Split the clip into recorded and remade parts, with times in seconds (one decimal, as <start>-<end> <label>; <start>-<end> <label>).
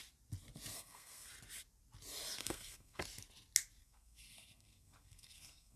0.0-0.7 recorded; 0.7-1.3 remade; 1.3-2.4 recorded; 2.4-3.0 remade; 3.0-3.8 recorded; 3.8-5.8 remade